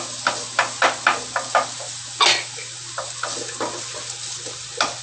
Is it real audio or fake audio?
real